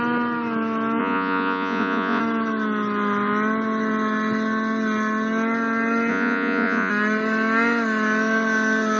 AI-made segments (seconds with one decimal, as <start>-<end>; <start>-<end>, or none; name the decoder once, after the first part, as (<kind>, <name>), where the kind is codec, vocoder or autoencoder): 1.0-2.2 (vocoder, Vocos); 6.1-6.9